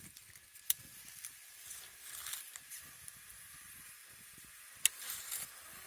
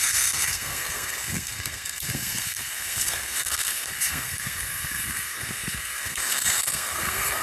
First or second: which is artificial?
second